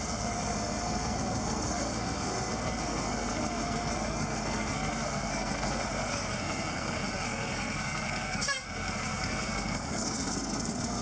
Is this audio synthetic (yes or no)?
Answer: yes